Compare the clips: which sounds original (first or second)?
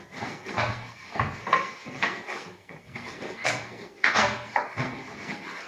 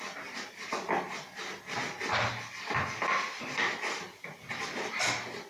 second